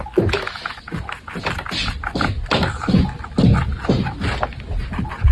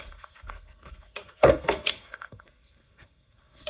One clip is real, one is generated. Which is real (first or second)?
first